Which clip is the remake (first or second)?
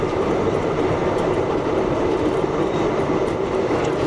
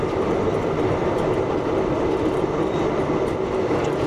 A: first